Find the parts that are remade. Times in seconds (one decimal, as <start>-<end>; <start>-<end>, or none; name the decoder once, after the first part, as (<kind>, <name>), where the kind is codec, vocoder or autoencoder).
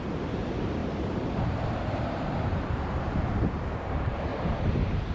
0.0-5.1 (vocoder, BigVGAN v2)